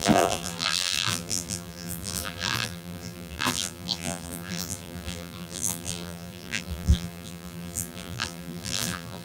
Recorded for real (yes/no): no